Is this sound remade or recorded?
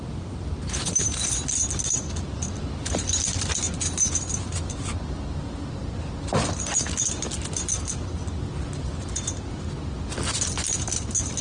recorded